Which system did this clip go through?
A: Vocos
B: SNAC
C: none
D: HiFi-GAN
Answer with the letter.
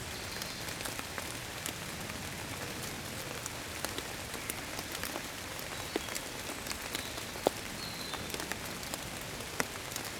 C